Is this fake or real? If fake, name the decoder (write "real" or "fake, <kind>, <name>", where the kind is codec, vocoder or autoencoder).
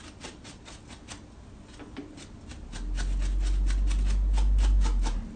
real